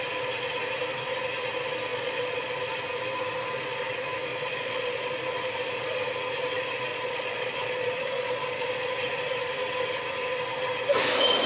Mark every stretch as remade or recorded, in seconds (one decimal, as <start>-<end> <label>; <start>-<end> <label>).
0.0-1.9 recorded; 1.9-2.5 remade; 2.5-4.3 recorded; 4.3-5.2 remade; 5.2-6.9 recorded; 6.9-8.9 remade; 8.9-11.5 recorded